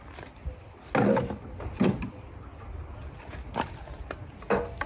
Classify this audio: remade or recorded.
recorded